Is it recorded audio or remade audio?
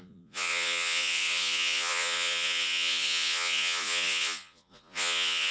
remade